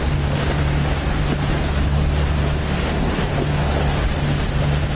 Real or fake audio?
real